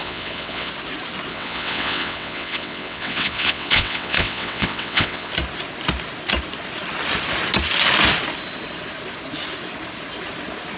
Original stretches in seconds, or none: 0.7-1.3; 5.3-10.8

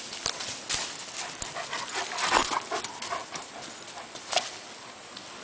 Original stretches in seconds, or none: 0.0-5.4

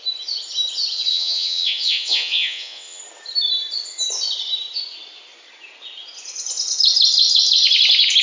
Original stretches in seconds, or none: 0.0-1.1; 3.0-8.2

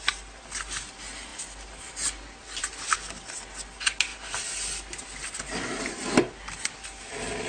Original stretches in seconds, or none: 0.0-7.5